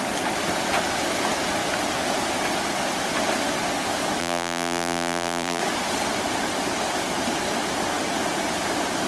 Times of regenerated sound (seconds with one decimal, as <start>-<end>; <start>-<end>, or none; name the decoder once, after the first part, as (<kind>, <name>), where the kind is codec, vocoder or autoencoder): 4.2-5.6 (vocoder, BigVGAN v2)